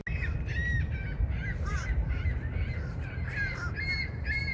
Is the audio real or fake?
real